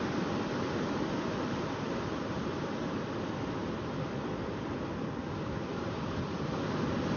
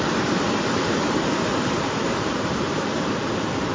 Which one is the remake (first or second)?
second